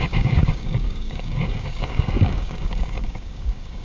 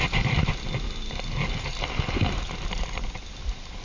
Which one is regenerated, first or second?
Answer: first